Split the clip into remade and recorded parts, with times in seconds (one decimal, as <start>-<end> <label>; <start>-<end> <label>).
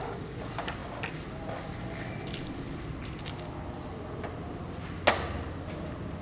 0.0-6.2 recorded